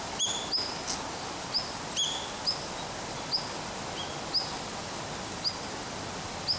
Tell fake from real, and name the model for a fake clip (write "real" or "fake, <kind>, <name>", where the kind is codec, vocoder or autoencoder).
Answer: real